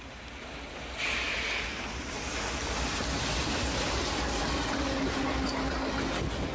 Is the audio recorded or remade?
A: recorded